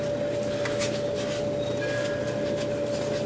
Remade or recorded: recorded